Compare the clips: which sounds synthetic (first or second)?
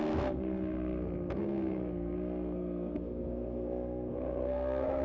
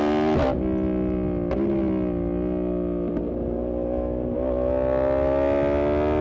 first